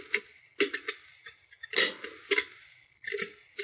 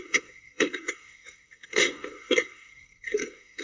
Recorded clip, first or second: first